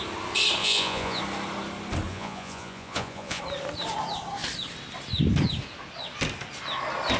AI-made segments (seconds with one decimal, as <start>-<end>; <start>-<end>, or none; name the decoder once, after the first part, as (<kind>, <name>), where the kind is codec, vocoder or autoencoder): 0.6-1.2 (vocoder, Vocos); 2.1-3.4